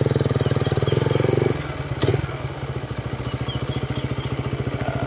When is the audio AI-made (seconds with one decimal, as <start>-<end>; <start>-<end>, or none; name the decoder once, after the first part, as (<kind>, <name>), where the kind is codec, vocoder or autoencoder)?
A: none